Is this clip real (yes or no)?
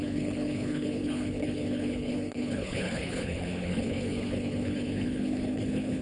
no